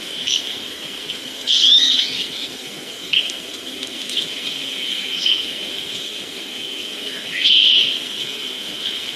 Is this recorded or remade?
remade